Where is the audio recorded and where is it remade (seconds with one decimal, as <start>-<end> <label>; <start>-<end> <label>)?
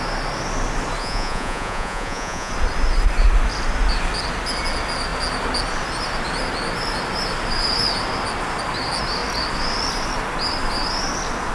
0.0-1.0 recorded; 1.0-2.5 remade; 2.5-11.5 recorded